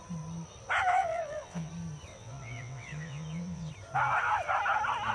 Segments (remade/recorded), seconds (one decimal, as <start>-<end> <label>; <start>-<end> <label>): 0.0-0.9 recorded; 0.9-1.7 remade; 1.7-2.1 recorded; 2.1-3.7 remade; 3.7-5.1 recorded